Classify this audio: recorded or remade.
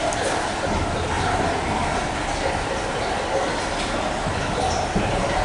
recorded